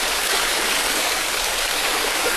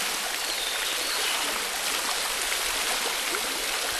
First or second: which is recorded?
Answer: second